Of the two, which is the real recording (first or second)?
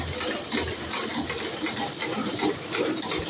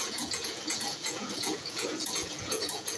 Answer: first